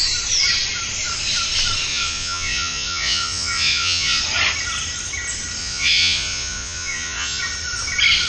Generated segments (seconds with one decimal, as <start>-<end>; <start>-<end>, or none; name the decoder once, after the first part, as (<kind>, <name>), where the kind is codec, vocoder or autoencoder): 1.9-4.2 (vocoder, Vocos); 5.6-7.4